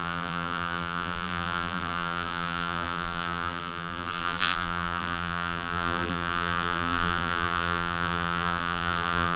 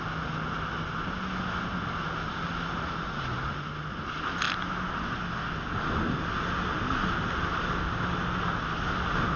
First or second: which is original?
second